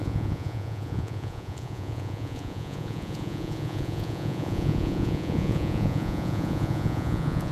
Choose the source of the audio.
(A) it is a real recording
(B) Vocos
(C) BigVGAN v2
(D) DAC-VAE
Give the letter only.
B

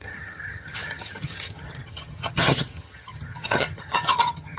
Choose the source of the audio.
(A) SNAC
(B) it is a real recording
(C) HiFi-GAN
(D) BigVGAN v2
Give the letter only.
C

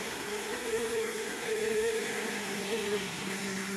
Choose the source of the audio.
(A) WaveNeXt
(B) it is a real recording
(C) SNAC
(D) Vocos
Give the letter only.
C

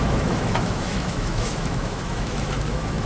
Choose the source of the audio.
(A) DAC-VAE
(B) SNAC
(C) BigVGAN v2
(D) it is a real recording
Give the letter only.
A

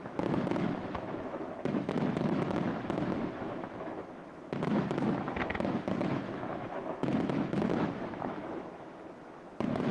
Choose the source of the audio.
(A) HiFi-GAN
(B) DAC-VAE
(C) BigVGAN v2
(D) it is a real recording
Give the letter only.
B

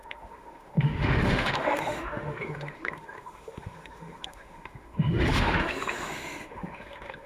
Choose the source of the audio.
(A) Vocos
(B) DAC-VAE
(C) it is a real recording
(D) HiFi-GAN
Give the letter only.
B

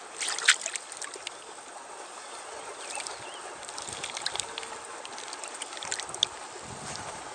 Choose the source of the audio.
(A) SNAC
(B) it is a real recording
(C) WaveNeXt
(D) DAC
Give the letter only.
B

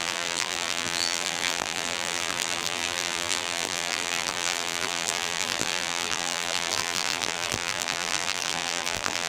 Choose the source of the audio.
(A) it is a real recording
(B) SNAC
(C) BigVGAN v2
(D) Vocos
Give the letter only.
C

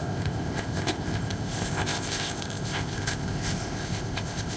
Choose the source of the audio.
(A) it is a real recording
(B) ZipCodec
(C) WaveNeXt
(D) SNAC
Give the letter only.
B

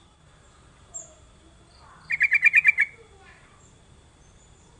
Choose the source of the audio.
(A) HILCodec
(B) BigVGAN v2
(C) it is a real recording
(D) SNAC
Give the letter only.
C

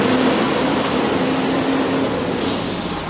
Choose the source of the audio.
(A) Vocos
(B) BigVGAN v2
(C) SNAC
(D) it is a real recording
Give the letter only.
D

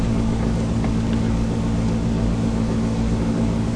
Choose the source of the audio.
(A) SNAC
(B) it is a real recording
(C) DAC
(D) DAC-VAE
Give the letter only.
C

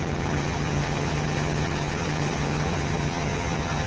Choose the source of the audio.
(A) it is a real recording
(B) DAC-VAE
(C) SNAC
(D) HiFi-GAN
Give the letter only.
D